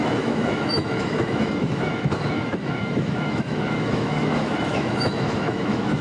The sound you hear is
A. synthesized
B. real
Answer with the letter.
A